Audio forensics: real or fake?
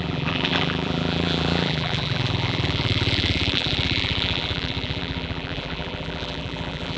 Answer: fake